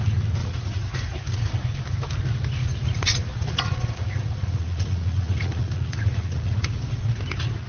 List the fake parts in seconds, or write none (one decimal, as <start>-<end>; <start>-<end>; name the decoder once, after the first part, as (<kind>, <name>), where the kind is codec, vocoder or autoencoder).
0.4-1.5 (vocoder, Vocos); 2.6-7.2